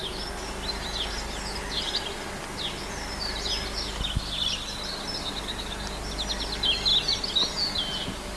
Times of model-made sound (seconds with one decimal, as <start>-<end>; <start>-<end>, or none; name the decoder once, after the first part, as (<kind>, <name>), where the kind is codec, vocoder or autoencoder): none